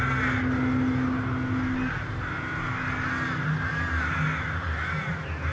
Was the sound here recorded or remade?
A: recorded